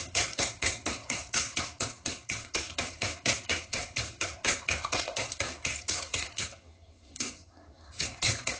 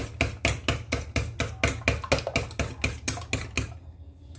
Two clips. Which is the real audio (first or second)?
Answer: second